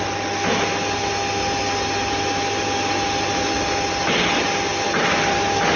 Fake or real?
real